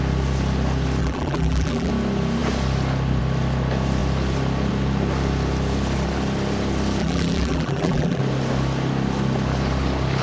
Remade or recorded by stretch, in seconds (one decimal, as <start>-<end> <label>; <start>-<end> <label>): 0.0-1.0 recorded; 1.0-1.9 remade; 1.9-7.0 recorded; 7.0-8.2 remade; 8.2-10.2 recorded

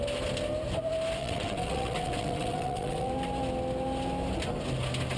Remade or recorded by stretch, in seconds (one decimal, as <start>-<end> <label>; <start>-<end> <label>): 0.0-1.2 recorded; 1.2-3.1 remade; 3.1-5.2 recorded

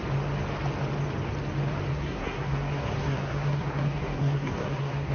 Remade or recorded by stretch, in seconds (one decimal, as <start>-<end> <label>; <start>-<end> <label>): 0.0-1.9 recorded; 1.9-5.1 remade

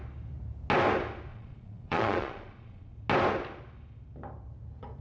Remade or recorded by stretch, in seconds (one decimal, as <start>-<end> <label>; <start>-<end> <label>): 0.0-1.3 recorded; 1.3-2.9 remade; 2.9-5.0 recorded

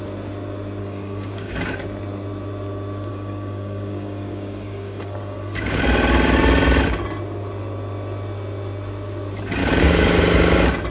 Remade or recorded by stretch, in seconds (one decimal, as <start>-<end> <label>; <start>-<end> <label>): 0.0-0.8 recorded; 0.8-1.6 remade; 1.6-3.1 recorded; 3.1-5.8 remade; 5.8-9.6 recorded; 9.6-10.2 remade; 10.2-10.9 recorded

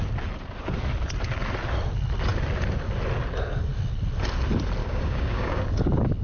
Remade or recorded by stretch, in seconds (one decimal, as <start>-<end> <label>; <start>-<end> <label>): 0.0-4.8 recorded; 4.8-5.6 remade; 5.6-6.2 recorded